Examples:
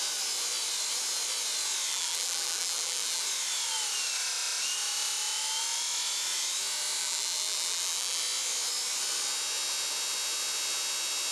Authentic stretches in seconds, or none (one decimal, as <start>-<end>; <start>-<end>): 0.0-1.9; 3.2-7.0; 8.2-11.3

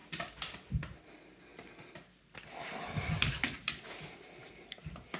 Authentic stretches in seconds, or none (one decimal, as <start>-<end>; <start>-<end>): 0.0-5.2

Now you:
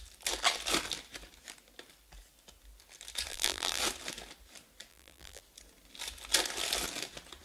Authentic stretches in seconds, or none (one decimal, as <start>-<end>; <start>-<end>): 0.0-3.3; 3.8-4.9; 5.4-7.4